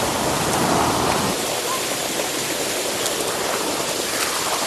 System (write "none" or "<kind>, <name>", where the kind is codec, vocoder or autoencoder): none